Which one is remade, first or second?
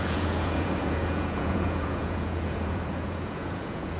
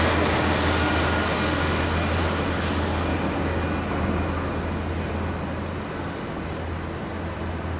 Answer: first